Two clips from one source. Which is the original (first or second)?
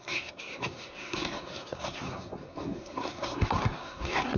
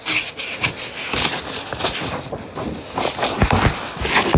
second